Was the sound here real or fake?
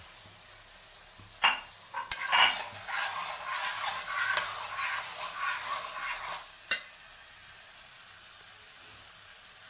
real